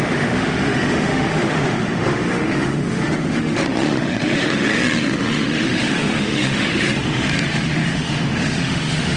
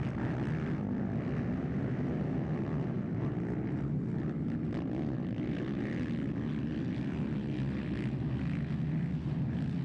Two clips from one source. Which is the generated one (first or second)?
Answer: first